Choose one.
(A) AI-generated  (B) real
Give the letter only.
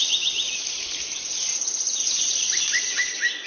B